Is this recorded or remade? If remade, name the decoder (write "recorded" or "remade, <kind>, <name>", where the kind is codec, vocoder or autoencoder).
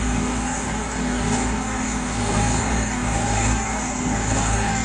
remade, codec, DAC